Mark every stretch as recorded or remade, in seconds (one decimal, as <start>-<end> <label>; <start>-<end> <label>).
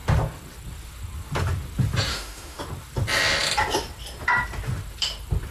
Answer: 0.0-2.1 recorded; 2.1-2.6 remade; 2.6-5.5 recorded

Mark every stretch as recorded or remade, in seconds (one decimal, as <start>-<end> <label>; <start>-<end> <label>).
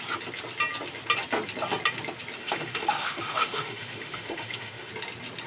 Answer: 0.0-2.4 recorded; 2.4-4.9 remade; 4.9-5.5 recorded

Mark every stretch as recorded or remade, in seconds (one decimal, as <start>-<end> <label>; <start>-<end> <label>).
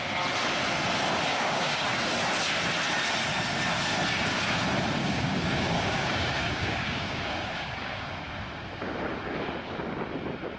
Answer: 0.0-1.3 recorded; 1.3-2.0 remade; 2.0-5.0 recorded; 5.0-8.1 remade; 8.1-10.6 recorded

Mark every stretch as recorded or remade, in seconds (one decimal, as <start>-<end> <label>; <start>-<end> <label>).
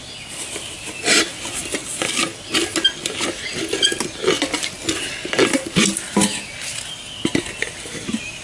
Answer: 0.0-8.4 recorded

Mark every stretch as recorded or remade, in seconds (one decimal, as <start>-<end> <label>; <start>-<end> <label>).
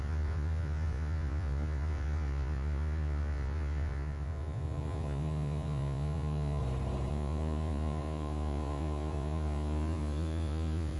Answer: 0.0-6.6 remade; 6.6-7.1 recorded; 7.1-11.0 remade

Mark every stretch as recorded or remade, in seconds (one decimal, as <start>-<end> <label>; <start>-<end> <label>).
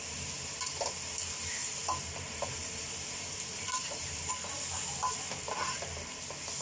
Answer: 0.0-1.6 recorded; 1.6-4.3 remade; 4.3-6.6 recorded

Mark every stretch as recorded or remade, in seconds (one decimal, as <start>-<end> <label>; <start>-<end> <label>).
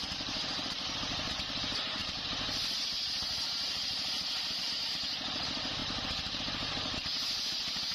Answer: 0.0-5.8 recorded; 5.8-6.4 remade; 6.4-7.9 recorded